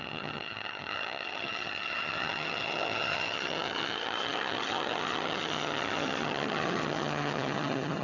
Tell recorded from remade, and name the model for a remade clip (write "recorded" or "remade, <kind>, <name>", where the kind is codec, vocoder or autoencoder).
remade, vocoder, HiFi-GAN